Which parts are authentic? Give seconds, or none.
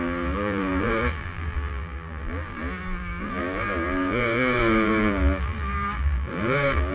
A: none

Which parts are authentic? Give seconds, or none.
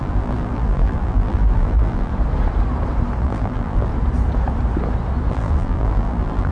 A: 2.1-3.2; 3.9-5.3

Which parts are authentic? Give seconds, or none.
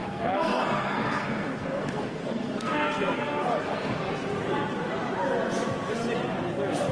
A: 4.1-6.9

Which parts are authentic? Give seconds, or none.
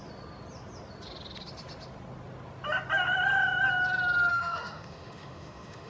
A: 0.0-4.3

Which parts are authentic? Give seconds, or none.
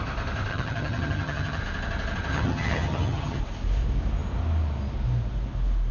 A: 0.0-0.5; 1.6-2.3; 3.4-5.9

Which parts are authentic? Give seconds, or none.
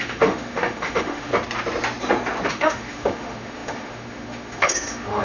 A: 1.3-2.5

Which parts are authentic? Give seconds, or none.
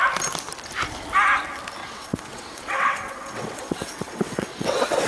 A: 0.0-1.8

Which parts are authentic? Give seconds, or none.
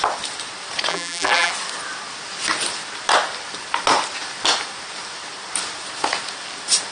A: 0.0-0.9; 1.5-6.9